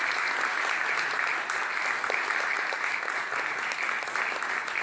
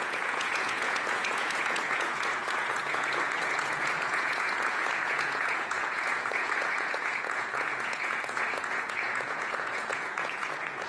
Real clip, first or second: first